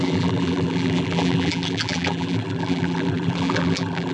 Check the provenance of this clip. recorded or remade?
remade